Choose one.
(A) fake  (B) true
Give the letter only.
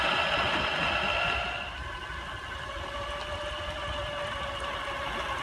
B